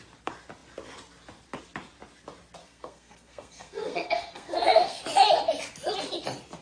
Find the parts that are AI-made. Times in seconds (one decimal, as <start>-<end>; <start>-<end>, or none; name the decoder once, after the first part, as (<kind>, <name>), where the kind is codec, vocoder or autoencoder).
2.6-5.0 (codec, SNAC)